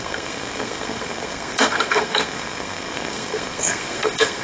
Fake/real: fake